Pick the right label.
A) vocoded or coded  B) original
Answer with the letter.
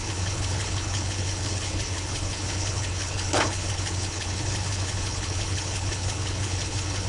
A